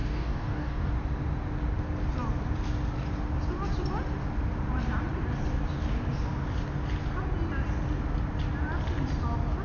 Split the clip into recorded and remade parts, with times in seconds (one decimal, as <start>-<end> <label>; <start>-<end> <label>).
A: 0.0-0.9 remade; 0.9-9.6 recorded